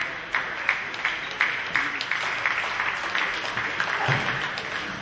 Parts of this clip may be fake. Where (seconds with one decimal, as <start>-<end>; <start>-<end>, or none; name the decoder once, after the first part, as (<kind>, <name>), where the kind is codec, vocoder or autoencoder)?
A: none